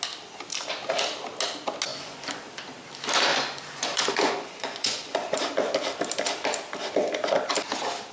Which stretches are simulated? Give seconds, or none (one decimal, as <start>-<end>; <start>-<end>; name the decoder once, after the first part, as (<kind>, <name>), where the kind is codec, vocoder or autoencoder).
1.9-2.5 (vocoder, Vocos); 3.3-5.5